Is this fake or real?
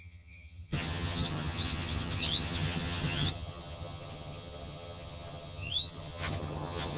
fake